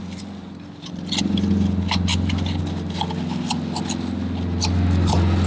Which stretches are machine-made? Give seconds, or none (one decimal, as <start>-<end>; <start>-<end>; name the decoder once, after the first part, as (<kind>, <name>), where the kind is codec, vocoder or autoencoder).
none